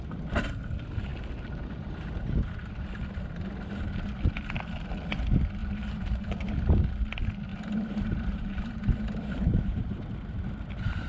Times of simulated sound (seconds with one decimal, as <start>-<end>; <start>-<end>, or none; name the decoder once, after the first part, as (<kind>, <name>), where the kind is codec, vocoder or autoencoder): 5.6-6.6 (vocoder, BigVGAN v2); 7.5-10.1